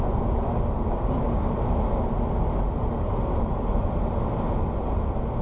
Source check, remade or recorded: recorded